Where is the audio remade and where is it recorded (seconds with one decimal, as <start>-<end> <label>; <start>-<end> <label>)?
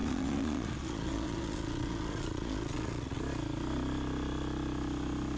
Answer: 0.0-3.2 remade; 3.2-5.4 recorded